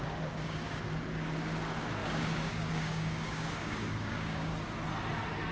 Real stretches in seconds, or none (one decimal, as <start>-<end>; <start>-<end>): 4.5-5.5